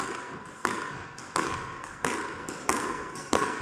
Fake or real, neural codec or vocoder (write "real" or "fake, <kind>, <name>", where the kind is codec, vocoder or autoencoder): fake, codec, SNAC